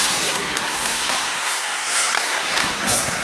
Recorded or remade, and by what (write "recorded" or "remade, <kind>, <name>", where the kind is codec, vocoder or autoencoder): remade, codec, SNAC